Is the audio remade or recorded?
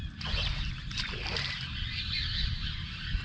recorded